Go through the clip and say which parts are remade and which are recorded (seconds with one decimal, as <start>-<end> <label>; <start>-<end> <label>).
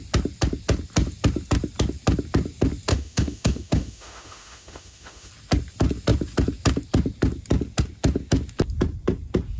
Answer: 0.0-2.9 recorded; 2.9-5.3 remade; 5.3-9.6 recorded